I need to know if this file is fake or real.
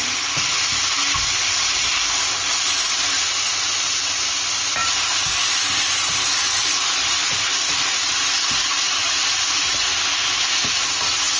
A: real